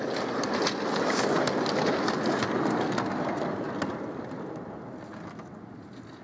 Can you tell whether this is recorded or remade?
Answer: recorded